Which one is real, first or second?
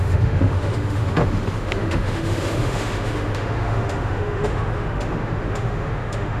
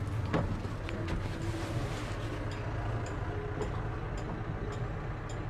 second